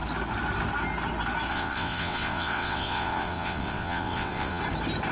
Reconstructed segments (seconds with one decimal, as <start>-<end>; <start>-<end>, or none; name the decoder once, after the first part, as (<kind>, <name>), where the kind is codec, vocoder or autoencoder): 1.5-4.6 (vocoder, WaveNeXt)